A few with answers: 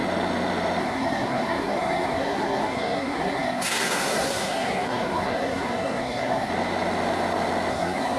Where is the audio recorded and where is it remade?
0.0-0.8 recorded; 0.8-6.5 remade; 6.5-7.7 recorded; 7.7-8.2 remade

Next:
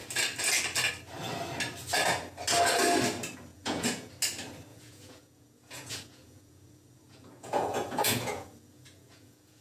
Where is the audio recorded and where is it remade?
0.0-3.5 recorded; 3.5-4.1 remade; 4.1-4.7 recorded; 4.7-9.6 remade

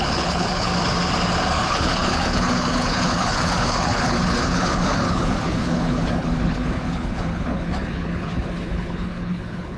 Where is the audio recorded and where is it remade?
0.0-0.7 remade; 0.7-1.5 recorded; 1.5-9.8 remade

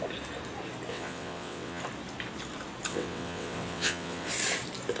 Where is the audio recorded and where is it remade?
0.0-0.9 recorded; 0.9-1.8 remade; 1.8-2.9 recorded; 2.9-4.3 remade; 4.3-5.0 recorded

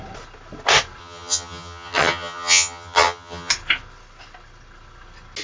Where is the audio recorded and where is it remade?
0.0-1.0 recorded; 1.0-3.5 remade; 3.5-5.4 recorded

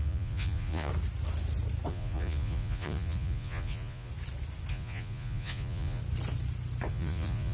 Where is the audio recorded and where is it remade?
0.0-0.9 remade; 0.9-1.9 recorded; 1.9-4.1 remade; 4.1-4.7 recorded; 4.7-6.0 remade; 6.0-6.9 recorded; 6.9-7.5 remade

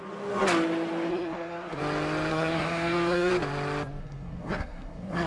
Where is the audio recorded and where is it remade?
0.0-1.1 recorded; 1.1-1.8 remade; 1.8-2.3 recorded; 2.3-3.3 remade; 3.3-4.0 recorded; 4.0-5.3 remade

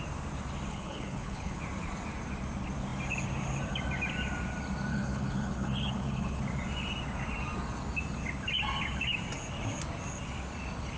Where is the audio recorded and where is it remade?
0.0-0.7 recorded; 0.7-1.6 remade; 1.6-4.9 recorded; 4.9-6.4 remade; 6.4-11.0 recorded